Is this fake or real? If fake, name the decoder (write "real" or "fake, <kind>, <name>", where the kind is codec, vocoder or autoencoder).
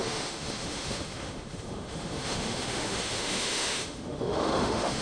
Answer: fake, autoencoder, DAC-VAE